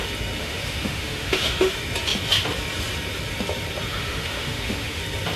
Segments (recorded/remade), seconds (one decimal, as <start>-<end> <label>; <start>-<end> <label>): 0.0-0.4 recorded; 0.4-1.7 remade; 1.7-3.9 recorded; 3.9-5.0 remade; 5.0-5.4 recorded